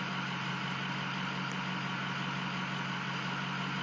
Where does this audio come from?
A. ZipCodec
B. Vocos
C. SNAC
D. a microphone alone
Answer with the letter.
D